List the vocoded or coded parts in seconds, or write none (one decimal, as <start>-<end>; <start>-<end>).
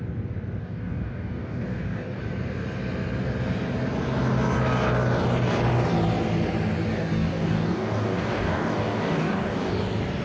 0.6-2.2; 6.9-9.7